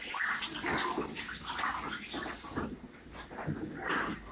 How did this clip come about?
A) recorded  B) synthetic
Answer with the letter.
A